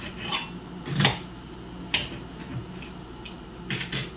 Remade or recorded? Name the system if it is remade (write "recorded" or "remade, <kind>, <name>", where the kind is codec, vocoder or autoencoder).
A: recorded